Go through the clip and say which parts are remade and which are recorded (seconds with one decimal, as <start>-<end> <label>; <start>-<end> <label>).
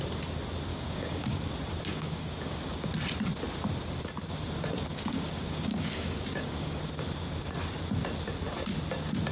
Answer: 0.0-0.7 recorded; 0.7-1.5 remade; 1.5-1.9 recorded; 1.9-2.6 remade; 2.6-4.9 recorded; 4.9-6.8 remade; 6.8-9.3 recorded